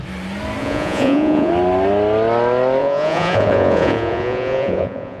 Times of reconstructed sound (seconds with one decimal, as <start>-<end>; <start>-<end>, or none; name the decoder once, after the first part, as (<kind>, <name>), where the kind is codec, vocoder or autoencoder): 0.6-1.5 (vocoder, Vocos); 2.8-5.2